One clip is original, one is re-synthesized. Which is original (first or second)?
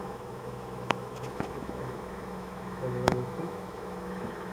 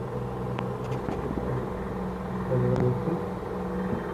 second